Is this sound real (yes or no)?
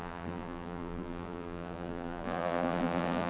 no